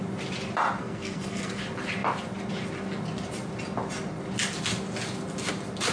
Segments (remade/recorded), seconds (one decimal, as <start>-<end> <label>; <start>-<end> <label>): 0.0-0.8 recorded; 0.8-1.6 remade; 1.6-5.9 recorded